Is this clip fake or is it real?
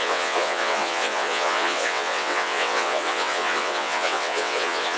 fake